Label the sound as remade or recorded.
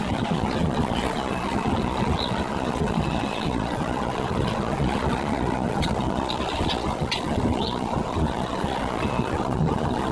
remade